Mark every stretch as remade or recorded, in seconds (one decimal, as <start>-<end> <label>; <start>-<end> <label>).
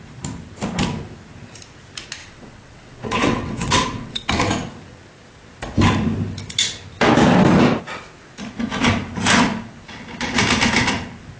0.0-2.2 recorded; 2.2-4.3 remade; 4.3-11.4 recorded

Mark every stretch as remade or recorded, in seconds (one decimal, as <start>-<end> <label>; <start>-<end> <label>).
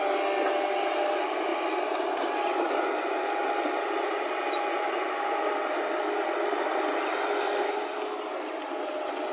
0.0-9.3 recorded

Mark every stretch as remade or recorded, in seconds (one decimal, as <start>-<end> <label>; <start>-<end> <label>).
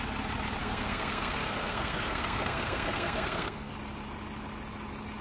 0.0-0.6 recorded; 0.6-3.7 remade; 3.7-5.2 recorded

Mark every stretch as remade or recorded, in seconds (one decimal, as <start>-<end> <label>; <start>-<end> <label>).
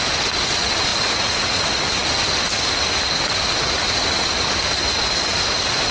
0.0-0.9 recorded; 0.9-1.6 remade; 1.6-5.9 recorded